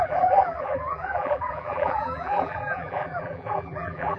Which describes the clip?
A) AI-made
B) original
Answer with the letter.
A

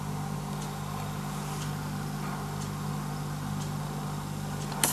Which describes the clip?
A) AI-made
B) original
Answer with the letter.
B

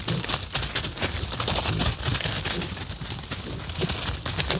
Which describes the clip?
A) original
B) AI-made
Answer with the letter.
A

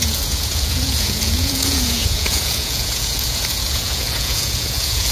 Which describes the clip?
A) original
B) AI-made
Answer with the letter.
B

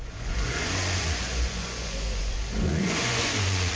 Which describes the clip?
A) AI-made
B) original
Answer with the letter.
A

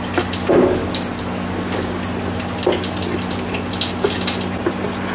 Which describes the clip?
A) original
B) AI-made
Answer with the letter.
A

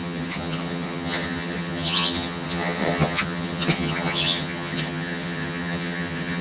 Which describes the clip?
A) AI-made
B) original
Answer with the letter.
A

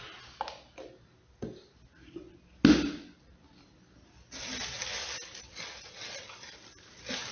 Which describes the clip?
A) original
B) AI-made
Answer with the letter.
A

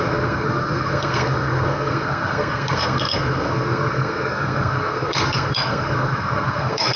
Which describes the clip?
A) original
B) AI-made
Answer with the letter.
B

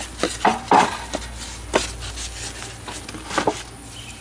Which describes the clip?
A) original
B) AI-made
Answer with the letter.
A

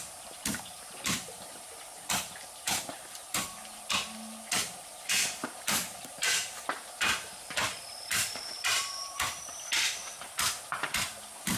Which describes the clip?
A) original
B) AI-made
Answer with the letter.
B